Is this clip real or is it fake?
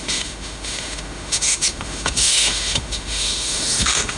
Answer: fake